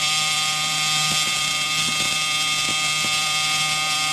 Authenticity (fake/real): fake